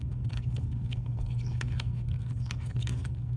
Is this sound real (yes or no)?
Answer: no